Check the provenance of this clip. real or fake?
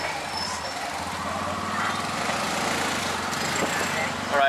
real